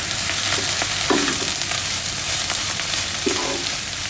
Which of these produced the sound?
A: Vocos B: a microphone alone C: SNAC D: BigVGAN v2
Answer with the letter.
B